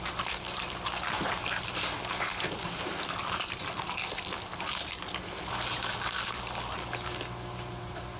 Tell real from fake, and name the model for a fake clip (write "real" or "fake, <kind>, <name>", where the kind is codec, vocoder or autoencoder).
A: real